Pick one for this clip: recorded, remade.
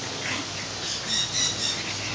recorded